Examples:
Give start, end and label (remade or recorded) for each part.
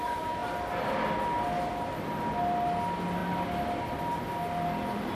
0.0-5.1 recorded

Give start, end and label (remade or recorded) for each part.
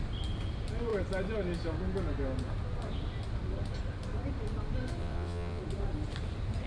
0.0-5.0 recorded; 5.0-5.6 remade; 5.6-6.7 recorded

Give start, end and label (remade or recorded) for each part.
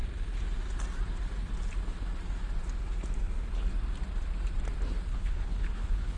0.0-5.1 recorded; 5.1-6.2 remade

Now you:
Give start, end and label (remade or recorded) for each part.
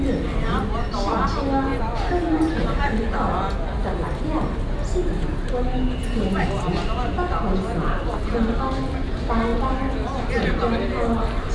0.0-11.5 recorded